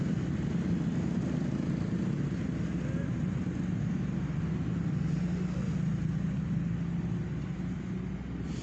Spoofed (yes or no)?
no